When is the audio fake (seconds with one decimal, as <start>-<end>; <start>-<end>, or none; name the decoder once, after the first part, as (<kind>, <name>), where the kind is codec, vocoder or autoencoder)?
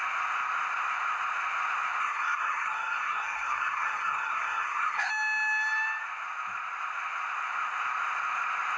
2.0-5.1 (codec, SNAC)